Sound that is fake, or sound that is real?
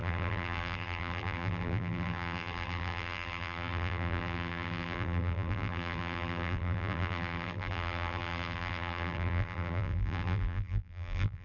fake